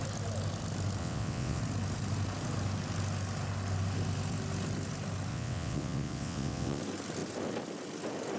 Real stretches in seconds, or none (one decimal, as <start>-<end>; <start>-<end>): 0.0-1.0; 1.6-5.3; 6.8-8.4